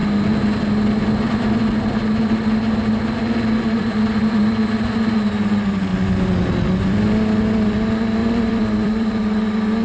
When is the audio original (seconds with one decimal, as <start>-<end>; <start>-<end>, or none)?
0.0-3.8; 5.1-8.2; 9.4-9.8